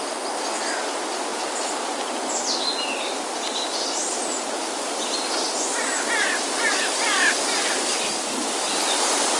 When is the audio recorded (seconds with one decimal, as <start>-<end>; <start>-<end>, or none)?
0.0-9.4